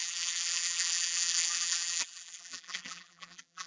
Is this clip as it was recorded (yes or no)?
no